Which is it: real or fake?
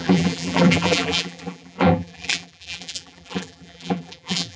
fake